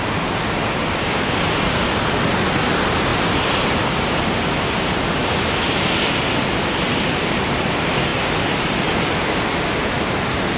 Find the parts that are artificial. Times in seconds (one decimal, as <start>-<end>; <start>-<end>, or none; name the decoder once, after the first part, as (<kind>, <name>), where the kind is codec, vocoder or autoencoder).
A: none